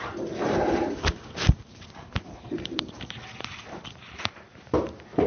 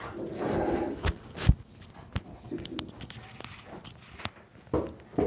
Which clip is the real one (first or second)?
second